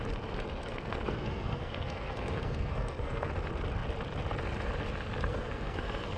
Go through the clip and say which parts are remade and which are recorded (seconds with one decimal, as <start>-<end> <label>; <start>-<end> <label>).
0.0-0.6 recorded; 0.6-3.3 remade; 3.3-5.3 recorded; 5.3-6.2 remade